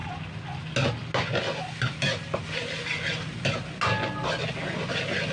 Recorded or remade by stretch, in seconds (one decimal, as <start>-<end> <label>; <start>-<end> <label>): 0.0-5.3 recorded